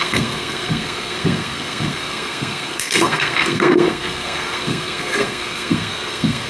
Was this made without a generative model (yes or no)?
no